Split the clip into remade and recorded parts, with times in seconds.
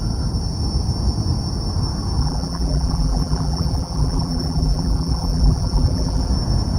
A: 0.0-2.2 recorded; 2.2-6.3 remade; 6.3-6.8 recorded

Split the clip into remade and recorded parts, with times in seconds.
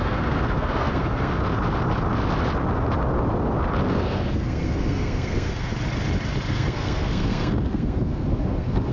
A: 0.0-1.4 remade; 1.4-3.9 recorded; 3.9-5.7 remade; 5.7-6.5 recorded; 6.5-8.9 remade